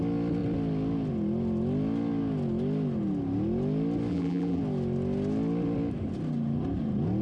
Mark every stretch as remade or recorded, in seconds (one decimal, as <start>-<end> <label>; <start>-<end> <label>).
0.0-4.1 recorded; 4.1-4.6 remade; 4.6-7.2 recorded